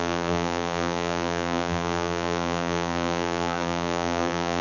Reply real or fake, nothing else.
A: fake